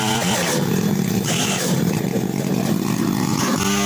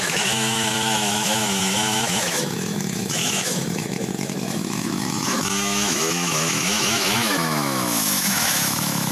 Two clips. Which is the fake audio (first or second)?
second